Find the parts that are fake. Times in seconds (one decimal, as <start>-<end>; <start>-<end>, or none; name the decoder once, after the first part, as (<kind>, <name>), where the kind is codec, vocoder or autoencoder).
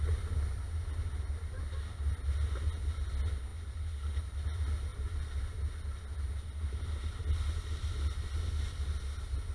none